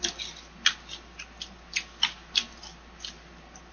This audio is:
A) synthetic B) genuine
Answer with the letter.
B